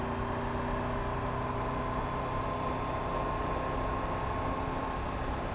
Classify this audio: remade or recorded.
recorded